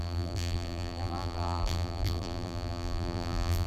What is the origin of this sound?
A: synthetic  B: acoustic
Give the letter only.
A